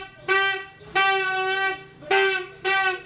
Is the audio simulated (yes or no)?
no